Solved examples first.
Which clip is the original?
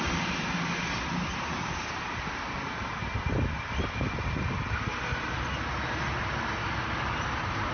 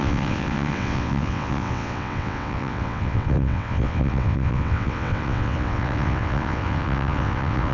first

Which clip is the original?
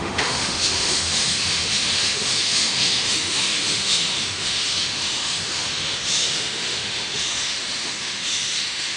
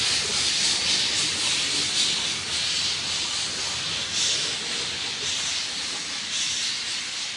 second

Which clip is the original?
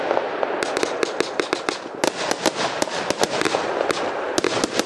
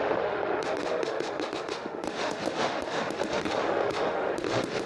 first